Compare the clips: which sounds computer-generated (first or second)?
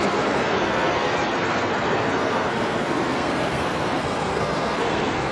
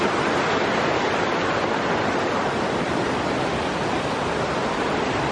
first